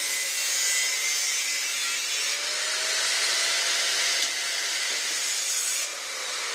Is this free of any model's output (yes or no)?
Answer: yes